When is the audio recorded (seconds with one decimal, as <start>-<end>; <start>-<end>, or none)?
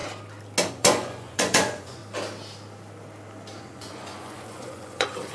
0.0-0.7; 2.0-3.6